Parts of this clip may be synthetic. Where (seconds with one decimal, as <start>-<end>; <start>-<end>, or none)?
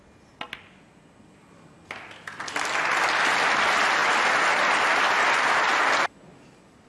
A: none